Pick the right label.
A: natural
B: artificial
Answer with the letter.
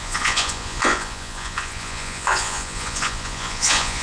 B